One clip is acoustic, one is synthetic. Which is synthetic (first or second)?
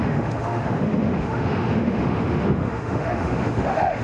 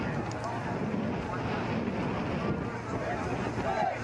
first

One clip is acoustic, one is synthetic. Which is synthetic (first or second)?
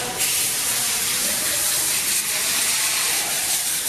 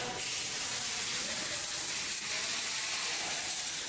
first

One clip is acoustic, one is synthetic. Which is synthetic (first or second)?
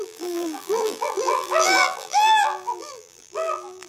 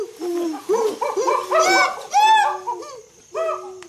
first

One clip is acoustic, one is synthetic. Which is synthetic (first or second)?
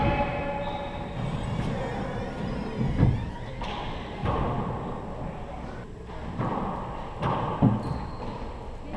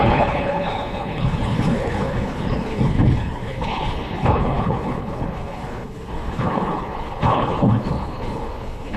second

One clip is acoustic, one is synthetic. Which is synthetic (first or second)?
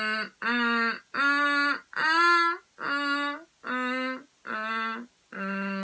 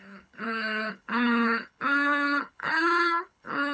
second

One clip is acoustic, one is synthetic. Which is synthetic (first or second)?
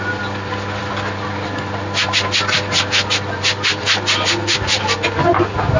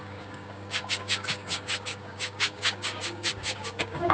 second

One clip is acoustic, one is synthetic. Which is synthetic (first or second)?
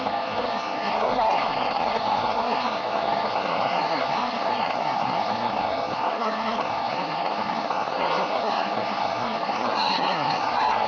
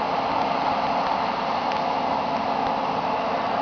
first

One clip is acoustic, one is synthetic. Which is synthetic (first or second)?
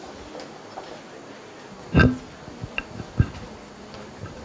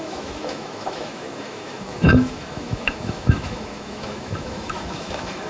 second